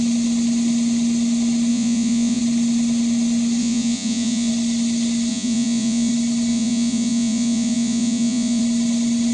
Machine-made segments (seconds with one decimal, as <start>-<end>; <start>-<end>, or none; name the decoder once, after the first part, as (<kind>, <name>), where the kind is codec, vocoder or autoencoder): 1.7-2.4 (vocoder, Vocos); 3.6-4.5; 5.3-6.1; 6.5-8.6